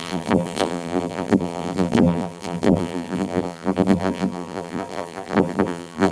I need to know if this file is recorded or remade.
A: remade